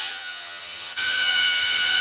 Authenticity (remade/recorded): remade